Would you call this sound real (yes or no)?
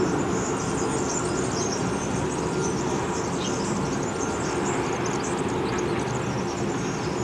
yes